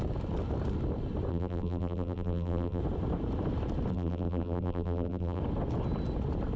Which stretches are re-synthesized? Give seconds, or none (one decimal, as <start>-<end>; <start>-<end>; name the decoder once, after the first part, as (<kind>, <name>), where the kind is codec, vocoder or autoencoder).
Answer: 1.3-2.8 (vocoder, BigVGAN v2); 3.9-5.4